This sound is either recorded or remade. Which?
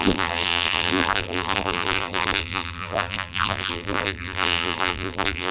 remade